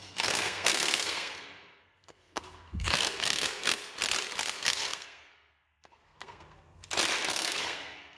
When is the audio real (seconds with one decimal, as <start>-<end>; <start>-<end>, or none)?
3.8-4.5; 6.8-7.3